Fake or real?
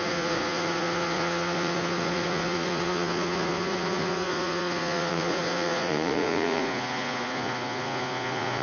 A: fake